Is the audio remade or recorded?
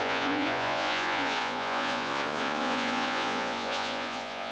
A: remade